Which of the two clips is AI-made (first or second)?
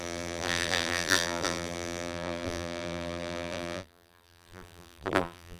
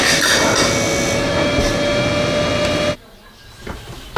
first